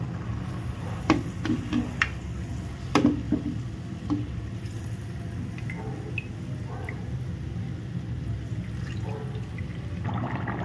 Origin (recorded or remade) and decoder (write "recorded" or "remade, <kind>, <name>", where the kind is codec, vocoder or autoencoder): recorded